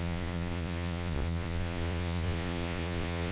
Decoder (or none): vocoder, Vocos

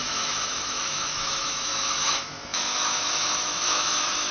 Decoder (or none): autoencoder, DAC-VAE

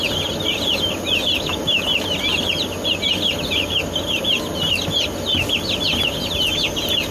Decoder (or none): none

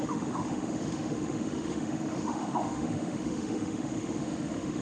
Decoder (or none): autoencoder, DAC-VAE